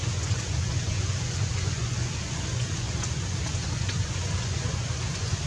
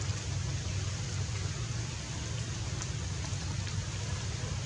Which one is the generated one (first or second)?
first